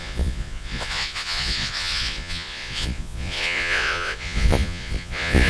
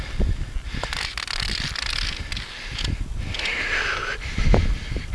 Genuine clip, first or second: second